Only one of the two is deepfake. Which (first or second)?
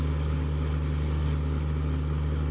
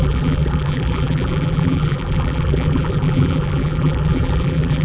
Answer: second